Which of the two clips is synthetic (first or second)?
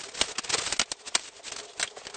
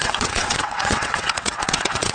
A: second